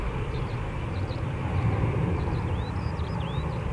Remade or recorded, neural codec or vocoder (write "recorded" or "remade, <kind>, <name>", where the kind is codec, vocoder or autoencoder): remade, vocoder, BigVGAN v2